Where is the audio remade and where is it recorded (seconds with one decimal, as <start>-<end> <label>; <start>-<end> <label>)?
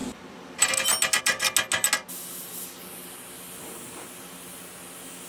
0.0-0.7 remade; 0.7-5.3 recorded